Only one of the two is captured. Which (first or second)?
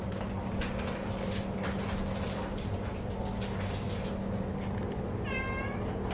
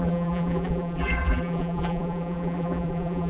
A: first